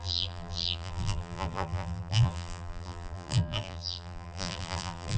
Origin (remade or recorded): remade